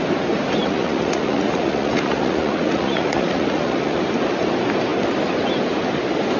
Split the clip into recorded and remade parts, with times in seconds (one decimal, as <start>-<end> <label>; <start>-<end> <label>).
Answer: 0.0-0.6 recorded; 0.6-4.0 remade; 4.0-6.4 recorded